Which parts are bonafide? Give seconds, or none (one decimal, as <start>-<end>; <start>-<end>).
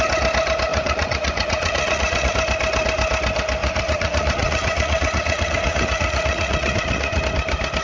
0.0-0.7; 2.3-3.6; 7.2-7.8